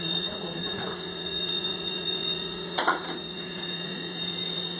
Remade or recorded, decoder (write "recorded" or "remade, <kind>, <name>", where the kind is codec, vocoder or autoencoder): remade, vocoder, Vocos